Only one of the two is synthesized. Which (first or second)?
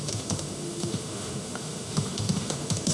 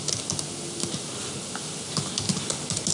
first